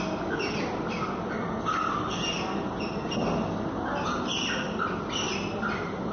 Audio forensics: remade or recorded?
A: recorded